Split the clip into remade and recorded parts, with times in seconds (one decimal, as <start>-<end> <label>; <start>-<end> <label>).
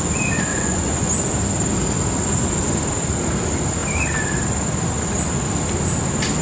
0.0-0.5 recorded; 0.5-1.1 remade; 1.1-6.4 recorded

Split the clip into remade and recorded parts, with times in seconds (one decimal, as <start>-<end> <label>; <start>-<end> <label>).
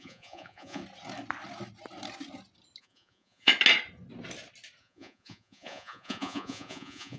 0.0-0.8 remade; 0.8-2.8 recorded; 2.8-3.5 remade; 3.5-4.8 recorded; 4.8-7.2 remade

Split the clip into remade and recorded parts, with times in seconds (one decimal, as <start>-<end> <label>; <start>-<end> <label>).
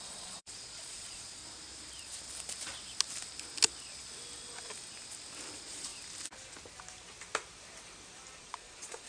0.0-1.4 remade; 1.4-5.5 recorded; 5.5-5.9 remade; 5.9-8.4 recorded; 8.4-9.1 remade